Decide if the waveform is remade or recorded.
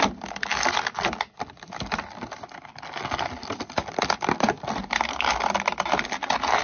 recorded